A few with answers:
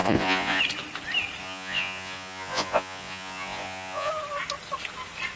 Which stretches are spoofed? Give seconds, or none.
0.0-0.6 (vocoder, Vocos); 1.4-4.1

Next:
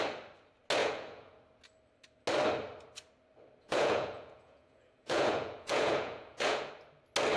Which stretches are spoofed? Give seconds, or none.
0.8-1.4 (vocoder, Vocos); 3.6-6.7

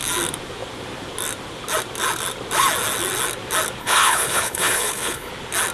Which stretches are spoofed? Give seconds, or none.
3.8-5.3 (codec, HILCodec)

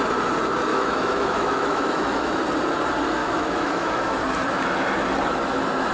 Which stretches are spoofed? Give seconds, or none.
0.7-2.4 (autoencoder, DAC-VAE); 3.2-4.2

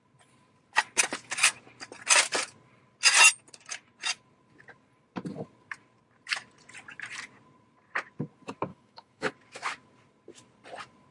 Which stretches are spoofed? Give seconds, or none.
8.7-9.3 (autoencoder, DAC-VAE)